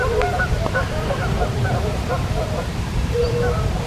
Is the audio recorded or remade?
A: remade